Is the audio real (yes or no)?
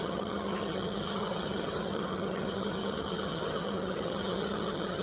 no